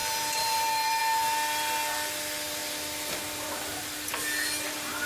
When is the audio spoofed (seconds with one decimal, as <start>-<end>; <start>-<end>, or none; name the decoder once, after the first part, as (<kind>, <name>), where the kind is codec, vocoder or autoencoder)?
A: 0.0-1.0 (vocoder, BigVGAN v2)